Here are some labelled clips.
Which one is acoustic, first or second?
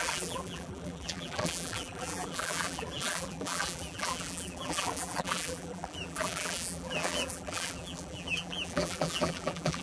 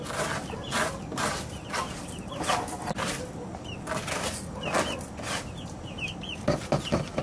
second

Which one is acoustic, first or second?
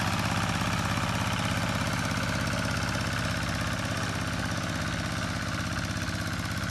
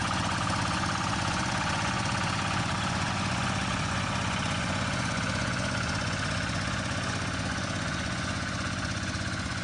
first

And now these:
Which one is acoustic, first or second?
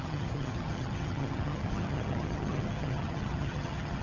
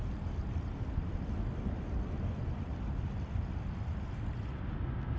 second